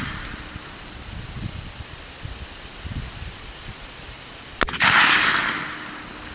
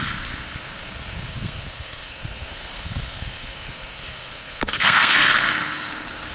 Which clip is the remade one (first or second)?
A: second